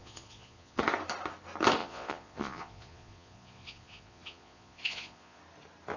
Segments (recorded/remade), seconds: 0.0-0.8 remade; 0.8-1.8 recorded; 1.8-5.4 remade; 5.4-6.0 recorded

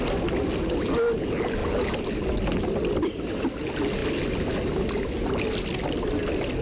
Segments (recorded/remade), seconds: 0.0-6.6 recorded